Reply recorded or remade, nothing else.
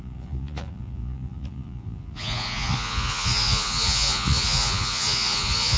remade